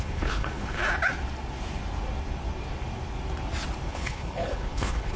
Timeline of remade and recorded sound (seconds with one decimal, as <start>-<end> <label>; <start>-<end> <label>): 0.0-0.8 remade; 0.8-3.9 recorded; 3.9-5.2 remade

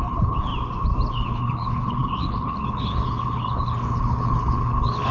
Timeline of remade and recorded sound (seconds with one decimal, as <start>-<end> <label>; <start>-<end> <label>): 0.0-0.5 remade; 0.5-1.1 recorded; 1.1-5.1 remade